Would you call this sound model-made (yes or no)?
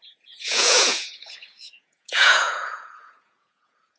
yes